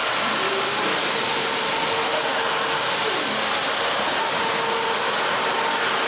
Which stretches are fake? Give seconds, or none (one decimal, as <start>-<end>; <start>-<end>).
none